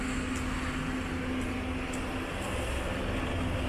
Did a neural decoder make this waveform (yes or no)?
no